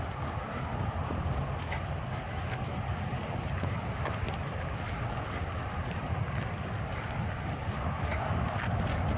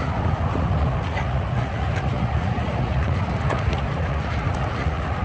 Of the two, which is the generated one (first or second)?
second